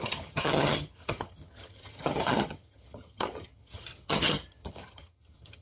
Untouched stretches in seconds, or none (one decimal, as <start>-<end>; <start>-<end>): none